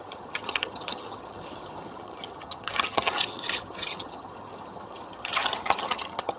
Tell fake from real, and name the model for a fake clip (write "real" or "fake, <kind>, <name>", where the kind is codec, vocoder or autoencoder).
fake, vocoder, HiFi-GAN